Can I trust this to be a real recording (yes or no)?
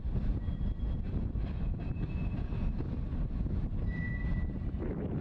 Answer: yes